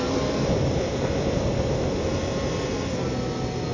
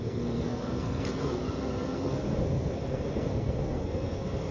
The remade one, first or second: second